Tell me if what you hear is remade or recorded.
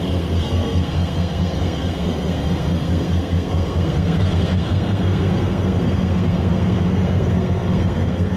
remade